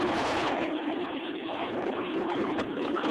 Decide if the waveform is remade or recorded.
remade